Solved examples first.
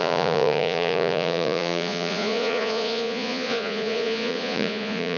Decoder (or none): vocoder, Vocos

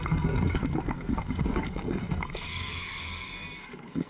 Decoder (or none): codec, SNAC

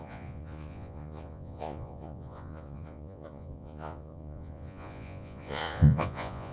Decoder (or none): vocoder, Vocos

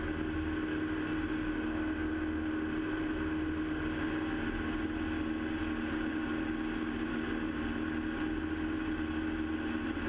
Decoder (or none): none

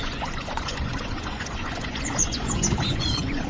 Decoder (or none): vocoder, Vocos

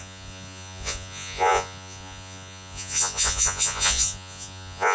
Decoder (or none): vocoder, Vocos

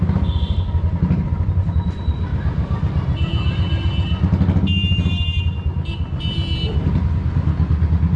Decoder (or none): none